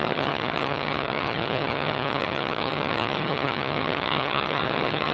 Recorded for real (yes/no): no